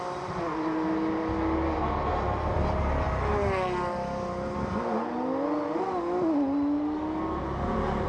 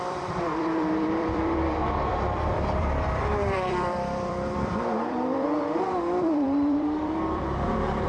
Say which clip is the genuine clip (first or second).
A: first